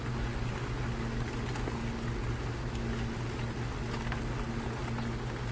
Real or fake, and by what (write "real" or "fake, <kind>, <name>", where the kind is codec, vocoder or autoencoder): real